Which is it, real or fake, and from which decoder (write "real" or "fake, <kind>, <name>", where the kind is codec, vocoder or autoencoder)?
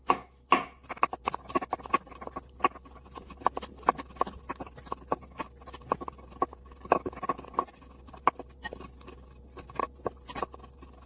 real